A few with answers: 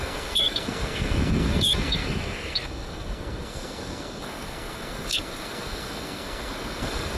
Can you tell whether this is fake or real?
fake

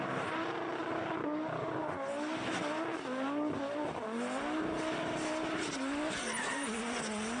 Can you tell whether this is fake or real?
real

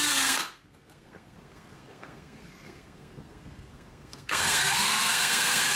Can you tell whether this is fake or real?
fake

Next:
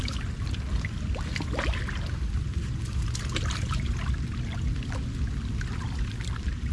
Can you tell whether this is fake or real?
real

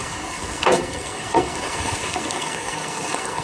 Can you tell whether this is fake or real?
fake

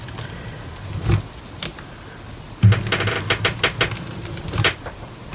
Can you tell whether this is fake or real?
real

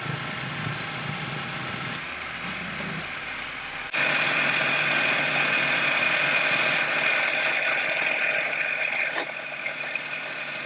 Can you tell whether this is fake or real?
real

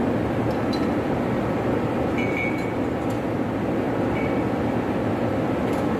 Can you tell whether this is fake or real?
real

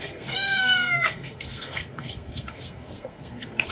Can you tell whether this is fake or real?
fake